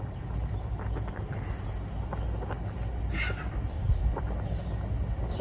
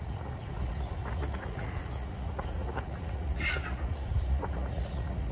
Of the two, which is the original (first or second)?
first